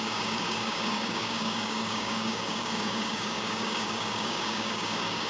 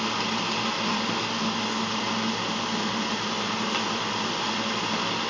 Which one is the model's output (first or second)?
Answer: first